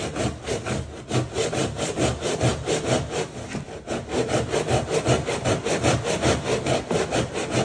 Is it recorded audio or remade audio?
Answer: recorded